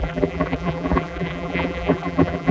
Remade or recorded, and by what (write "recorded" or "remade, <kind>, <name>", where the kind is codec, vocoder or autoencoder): remade, vocoder, BigVGAN v2